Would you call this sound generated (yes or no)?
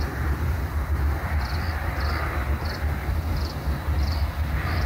no